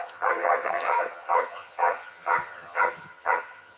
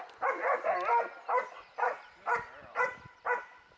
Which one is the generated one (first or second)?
first